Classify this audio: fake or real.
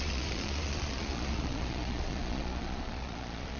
fake